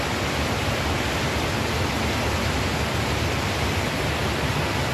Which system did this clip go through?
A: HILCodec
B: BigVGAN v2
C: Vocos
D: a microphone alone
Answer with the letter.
D